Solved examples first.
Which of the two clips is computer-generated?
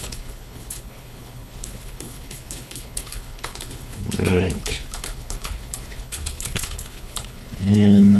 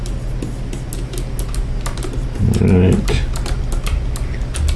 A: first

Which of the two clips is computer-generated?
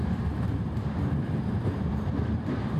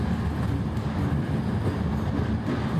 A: first